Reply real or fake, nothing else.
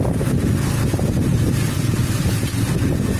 real